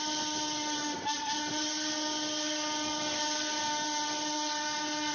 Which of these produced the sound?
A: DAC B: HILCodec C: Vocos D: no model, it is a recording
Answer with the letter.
D